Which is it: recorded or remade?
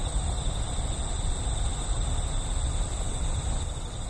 recorded